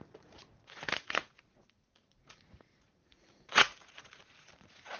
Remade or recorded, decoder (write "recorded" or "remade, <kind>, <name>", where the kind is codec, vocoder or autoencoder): remade, vocoder, Vocos